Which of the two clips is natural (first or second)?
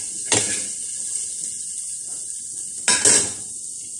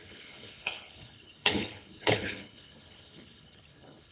first